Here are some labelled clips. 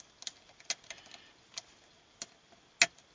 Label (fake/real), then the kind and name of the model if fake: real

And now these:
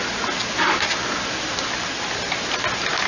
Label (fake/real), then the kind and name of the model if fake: real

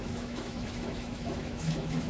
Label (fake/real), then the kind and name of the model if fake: fake, autoencoder, DAC-VAE